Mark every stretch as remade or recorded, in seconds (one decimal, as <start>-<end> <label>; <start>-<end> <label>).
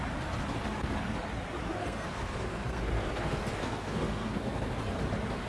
0.0-1.8 recorded; 1.8-4.8 remade; 4.8-5.5 recorded